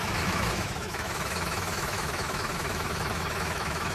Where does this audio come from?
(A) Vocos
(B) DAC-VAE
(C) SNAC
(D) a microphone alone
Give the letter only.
B